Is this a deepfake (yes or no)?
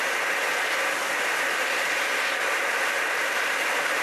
no